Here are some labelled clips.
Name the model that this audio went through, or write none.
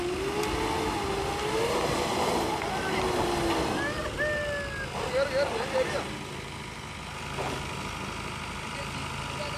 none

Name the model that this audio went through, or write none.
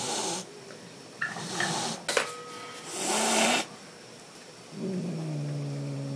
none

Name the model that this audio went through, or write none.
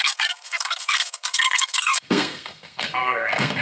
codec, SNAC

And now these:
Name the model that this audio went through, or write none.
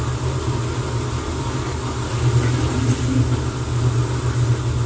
none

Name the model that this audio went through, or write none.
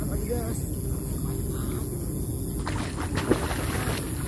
none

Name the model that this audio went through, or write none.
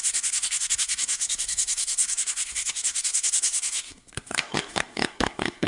codec, SNAC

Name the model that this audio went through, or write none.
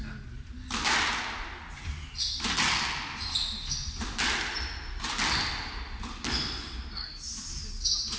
none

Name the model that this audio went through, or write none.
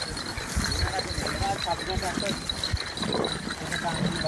none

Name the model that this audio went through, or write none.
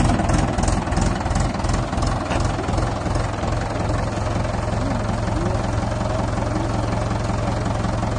none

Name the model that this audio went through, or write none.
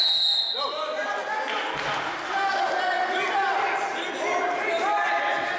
none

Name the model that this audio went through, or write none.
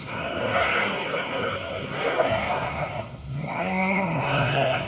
codec, SNAC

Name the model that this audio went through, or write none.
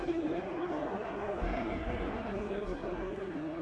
codec, SNAC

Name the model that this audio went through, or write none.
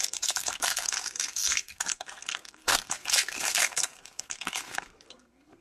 codec, SNAC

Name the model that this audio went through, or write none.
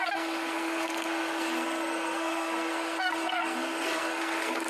codec, SNAC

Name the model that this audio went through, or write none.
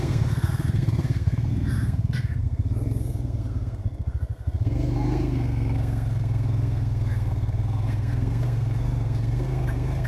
codec, SNAC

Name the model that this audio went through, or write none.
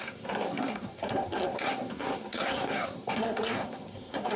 codec, SNAC